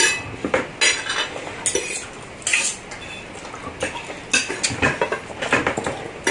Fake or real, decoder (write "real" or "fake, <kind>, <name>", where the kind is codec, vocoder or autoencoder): real